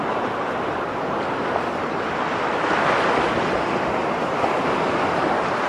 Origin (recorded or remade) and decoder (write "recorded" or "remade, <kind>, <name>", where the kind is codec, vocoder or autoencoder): recorded